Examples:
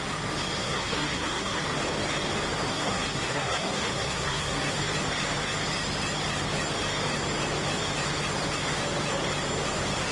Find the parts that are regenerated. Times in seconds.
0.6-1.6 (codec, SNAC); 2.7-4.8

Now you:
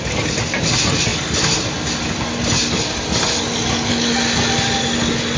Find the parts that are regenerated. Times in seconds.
none

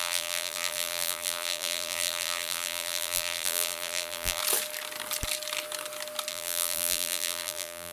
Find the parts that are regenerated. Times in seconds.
0.0-4.4 (vocoder, BigVGAN v2); 6.3-7.9

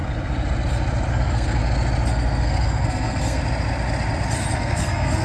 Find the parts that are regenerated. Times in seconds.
1.1-1.6 (codec, SNAC); 2.1-3.4; 4.6-5.2

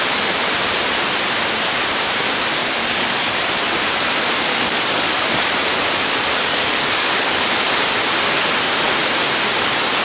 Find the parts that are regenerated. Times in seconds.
2.6-3.4 (codec, DAC); 4.5-5.1; 6.5-7.5